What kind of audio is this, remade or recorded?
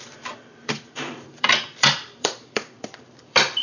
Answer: remade